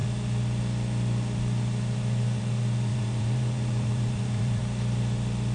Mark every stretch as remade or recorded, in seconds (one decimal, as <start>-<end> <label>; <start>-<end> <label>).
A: 0.0-2.9 recorded; 2.9-4.6 remade; 4.6-5.5 recorded